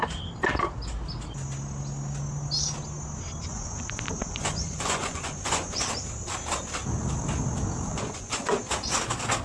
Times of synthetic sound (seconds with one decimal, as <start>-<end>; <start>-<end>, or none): 3.5-5.8; 7.9-8.6